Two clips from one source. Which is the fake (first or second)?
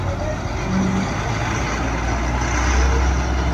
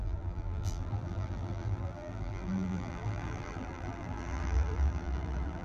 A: second